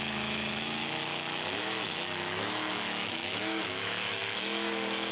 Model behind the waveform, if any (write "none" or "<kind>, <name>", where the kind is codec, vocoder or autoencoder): autoencoder, DAC-VAE